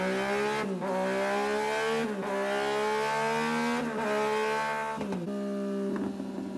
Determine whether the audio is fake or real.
real